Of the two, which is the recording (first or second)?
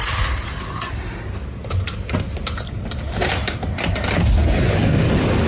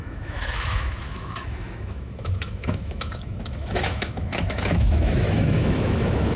first